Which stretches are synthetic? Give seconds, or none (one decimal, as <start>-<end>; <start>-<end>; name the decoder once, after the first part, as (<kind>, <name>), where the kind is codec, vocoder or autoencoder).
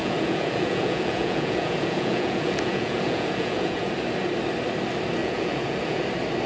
0.0-3.9 (vocoder, Vocos); 5.2-6.0